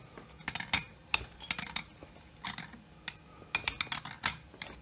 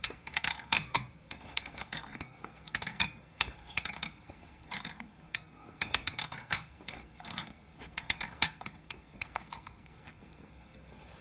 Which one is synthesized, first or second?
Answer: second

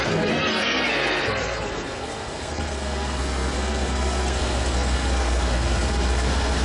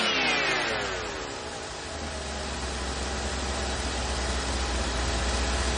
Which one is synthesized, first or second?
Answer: first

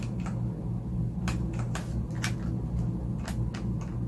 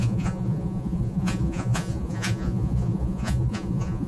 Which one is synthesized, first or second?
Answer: second